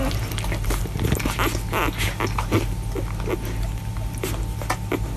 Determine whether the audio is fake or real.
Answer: real